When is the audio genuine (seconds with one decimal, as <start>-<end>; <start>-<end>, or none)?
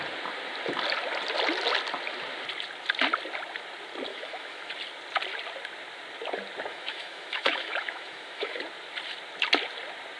0.0-4.1; 4.7-6.7; 8.6-10.2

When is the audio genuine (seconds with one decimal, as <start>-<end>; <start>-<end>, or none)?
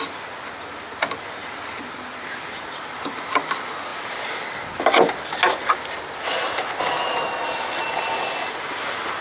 0.0-9.2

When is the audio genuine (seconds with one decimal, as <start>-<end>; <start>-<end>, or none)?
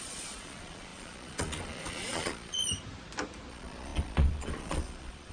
2.6-3.5